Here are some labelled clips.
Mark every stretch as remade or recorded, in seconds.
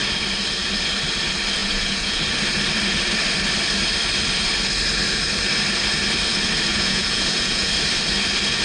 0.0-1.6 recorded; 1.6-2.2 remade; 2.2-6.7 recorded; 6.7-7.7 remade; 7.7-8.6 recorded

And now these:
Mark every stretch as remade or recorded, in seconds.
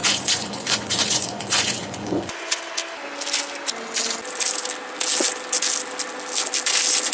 0.0-2.6 remade; 2.6-7.1 recorded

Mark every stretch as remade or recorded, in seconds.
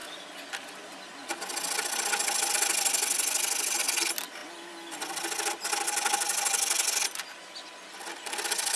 0.0-8.8 recorded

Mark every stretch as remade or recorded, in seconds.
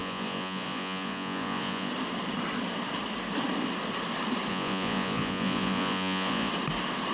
0.0-1.9 remade; 1.9-4.5 recorded; 4.5-6.5 remade; 6.5-7.1 recorded